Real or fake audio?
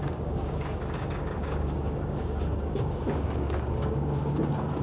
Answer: fake